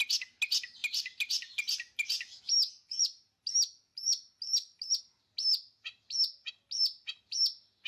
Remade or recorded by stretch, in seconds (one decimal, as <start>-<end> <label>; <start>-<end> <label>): 0.0-0.8 recorded; 0.8-2.4 remade; 2.4-7.9 recorded